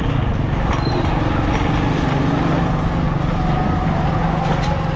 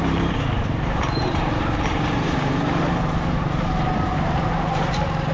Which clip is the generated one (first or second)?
second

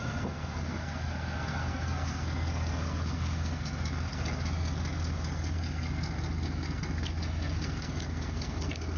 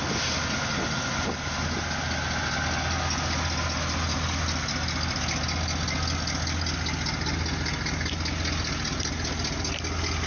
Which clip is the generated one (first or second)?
first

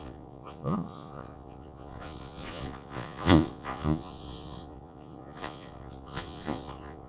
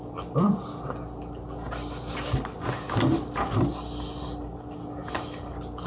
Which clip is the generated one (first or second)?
first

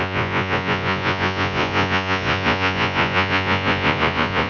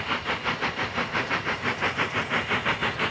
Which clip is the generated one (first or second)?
first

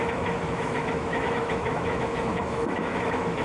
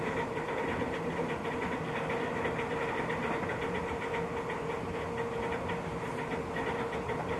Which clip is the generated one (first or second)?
first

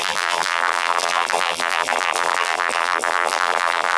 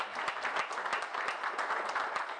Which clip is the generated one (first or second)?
first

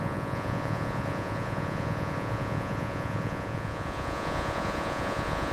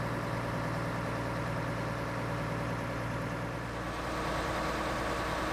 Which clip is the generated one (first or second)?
first